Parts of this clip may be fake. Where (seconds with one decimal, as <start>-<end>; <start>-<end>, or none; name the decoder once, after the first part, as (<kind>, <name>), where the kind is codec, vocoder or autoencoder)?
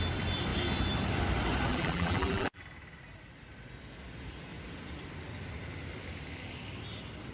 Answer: 1.7-2.6 (vocoder, BigVGAN v2)